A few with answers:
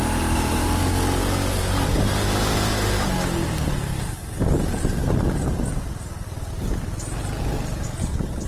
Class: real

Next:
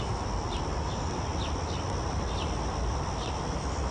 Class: real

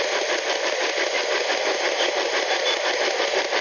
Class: fake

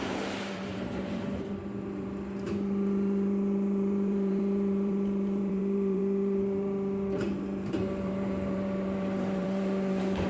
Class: fake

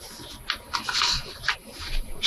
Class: real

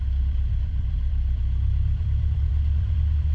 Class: fake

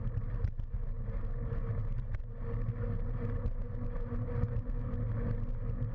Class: real